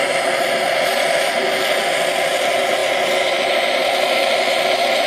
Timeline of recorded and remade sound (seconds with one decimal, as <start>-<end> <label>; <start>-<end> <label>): 0.0-5.1 recorded